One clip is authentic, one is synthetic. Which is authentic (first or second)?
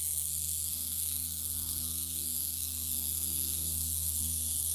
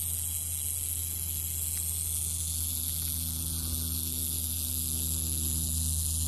second